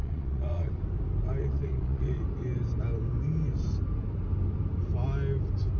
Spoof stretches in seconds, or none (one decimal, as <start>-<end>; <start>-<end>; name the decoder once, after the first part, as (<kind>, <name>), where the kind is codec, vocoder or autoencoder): 0.0-0.7 (vocoder, Vocos); 1.4-2.2